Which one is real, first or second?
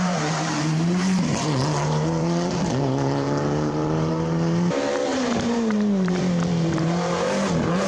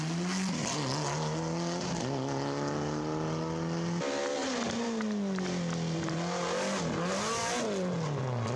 second